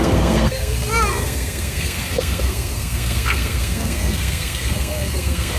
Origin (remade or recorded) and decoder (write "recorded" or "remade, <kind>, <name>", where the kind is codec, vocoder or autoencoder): remade, codec, SNAC